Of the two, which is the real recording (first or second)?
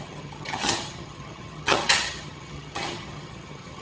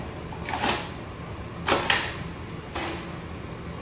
second